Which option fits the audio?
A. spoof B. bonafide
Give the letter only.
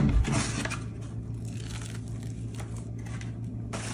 B